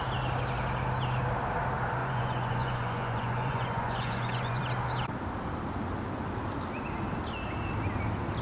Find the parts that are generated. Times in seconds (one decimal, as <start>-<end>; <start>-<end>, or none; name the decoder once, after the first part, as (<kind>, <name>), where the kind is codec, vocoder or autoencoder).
2.0-4.6 (vocoder, Vocos)